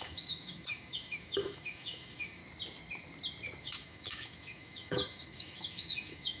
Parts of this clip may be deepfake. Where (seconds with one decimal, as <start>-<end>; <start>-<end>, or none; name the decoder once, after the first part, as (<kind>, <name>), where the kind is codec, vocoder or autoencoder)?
0.0-2.4 (autoencoder, DAC-VAE); 3.6-6.4